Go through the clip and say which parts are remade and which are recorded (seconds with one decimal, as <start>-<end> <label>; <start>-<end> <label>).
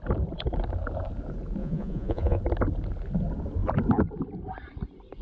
0.0-1.6 recorded; 1.6-2.4 remade; 2.4-5.2 recorded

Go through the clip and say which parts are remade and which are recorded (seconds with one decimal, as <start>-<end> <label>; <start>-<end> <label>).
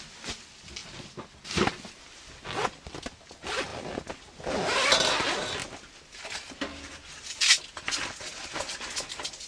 0.0-9.5 recorded